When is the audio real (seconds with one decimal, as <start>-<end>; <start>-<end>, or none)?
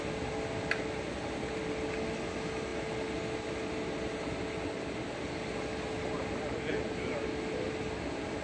0.0-8.4